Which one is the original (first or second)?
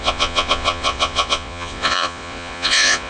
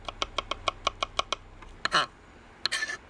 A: second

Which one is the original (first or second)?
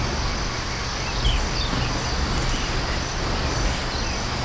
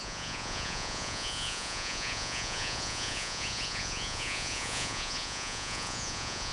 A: first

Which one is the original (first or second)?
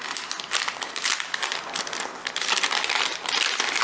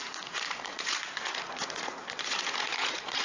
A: first